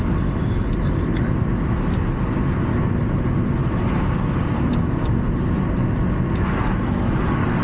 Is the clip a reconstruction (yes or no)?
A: no